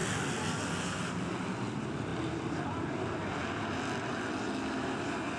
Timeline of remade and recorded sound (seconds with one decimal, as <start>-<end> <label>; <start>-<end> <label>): 0.0-5.4 recorded